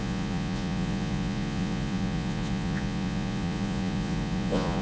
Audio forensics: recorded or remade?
remade